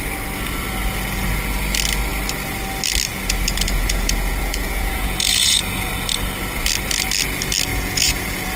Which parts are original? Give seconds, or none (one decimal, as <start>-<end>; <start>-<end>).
0.0-3.1; 5.9-7.7